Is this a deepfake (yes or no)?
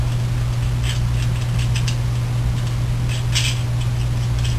no